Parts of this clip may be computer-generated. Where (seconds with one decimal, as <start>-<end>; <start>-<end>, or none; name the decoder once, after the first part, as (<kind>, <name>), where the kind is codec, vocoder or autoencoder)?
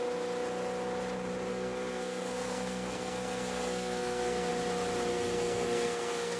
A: 1.5-4.5 (codec, SNAC); 5.1-6.4